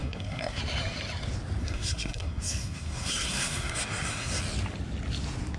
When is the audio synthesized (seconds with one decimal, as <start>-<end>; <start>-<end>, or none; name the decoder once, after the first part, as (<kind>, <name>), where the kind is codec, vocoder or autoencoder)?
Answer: 0.0-0.6 (codec, SNAC); 1.6-4.4